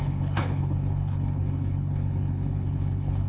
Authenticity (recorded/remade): remade